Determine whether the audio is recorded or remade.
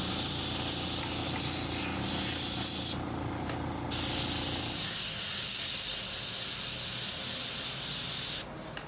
recorded